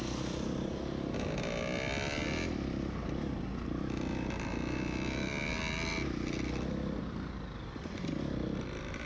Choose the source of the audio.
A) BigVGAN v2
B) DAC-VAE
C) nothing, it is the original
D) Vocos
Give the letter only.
C